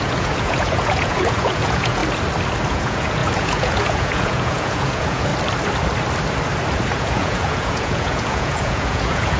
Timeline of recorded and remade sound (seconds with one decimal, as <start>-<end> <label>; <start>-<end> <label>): 0.0-2.0 remade; 2.0-2.7 recorded; 2.7-5.3 remade; 5.3-7.0 recorded; 7.0-9.4 remade